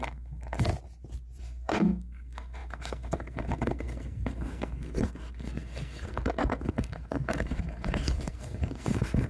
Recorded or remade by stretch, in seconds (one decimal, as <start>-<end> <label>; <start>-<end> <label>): 0.0-0.7 remade; 0.7-1.4 recorded; 1.4-9.3 remade